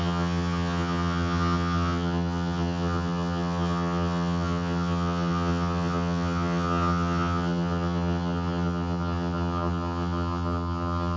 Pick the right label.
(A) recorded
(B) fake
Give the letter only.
B